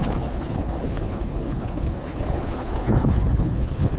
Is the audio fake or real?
fake